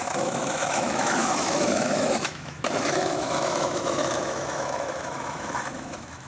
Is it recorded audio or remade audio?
remade